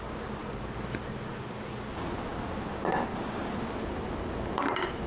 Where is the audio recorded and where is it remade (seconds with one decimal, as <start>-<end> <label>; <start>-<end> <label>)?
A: 0.0-0.4 recorded; 0.4-1.5 remade; 1.5-5.1 recorded